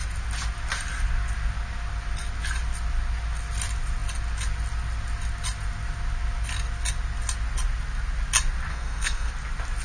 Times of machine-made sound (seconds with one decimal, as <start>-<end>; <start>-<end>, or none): 8.7-9.3